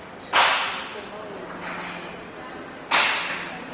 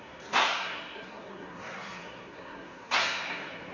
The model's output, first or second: second